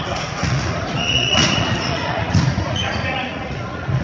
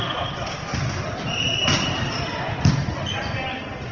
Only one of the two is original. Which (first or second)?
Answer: second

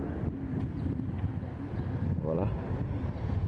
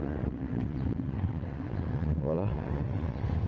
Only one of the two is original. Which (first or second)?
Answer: first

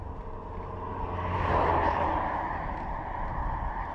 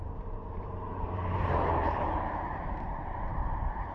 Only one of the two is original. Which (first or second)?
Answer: first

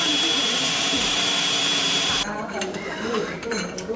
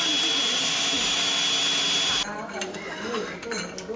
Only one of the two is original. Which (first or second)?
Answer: second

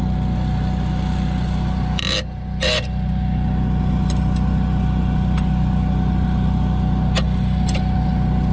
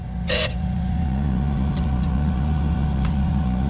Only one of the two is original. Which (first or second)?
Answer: first